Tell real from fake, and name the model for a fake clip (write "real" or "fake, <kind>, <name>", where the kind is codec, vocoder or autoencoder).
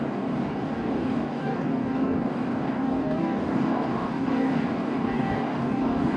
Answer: fake, codec, DAC